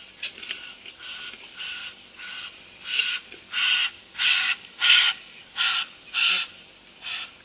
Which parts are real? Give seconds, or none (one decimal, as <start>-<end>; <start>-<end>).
0.0-4.0; 5.4-7.4